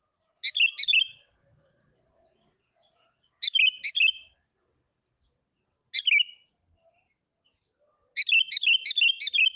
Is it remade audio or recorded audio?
recorded